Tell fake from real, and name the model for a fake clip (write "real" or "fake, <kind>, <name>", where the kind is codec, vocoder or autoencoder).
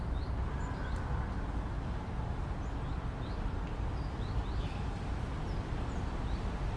real